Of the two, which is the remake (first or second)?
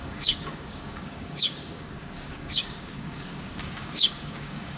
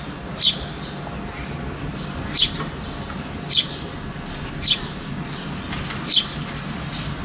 first